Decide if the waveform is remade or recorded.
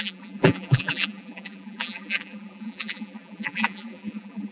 remade